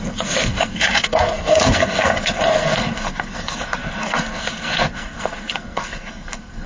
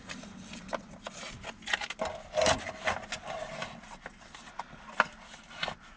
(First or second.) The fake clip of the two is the first